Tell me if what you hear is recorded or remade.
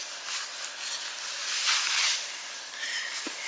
recorded